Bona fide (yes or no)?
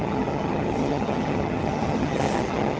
no